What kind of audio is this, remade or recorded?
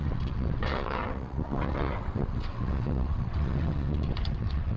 remade